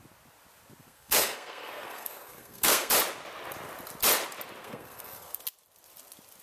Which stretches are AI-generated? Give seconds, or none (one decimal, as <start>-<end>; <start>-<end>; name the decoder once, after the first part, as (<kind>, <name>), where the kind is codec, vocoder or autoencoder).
0.8-2.9 (codec, SNAC); 4.6-5.4